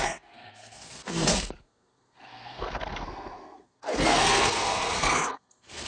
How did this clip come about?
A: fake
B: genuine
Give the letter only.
A